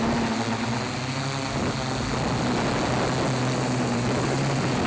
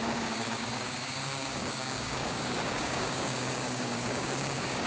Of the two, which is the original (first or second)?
first